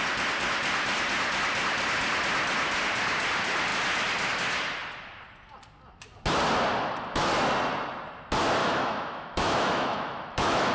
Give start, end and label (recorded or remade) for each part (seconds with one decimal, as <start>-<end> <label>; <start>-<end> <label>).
0.0-8.6 recorded; 8.6-10.7 remade